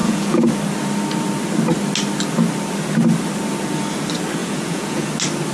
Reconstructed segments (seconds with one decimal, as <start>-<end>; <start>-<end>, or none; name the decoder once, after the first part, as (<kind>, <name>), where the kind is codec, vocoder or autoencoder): 0.0-0.5 (vocoder, Vocos); 4.4-5.1